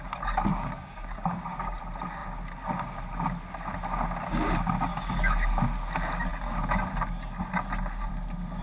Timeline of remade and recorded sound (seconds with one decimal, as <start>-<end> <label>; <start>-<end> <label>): 0.0-0.5 recorded; 0.5-1.8 remade; 1.8-4.9 recorded; 4.9-5.6 remade; 5.6-8.6 recorded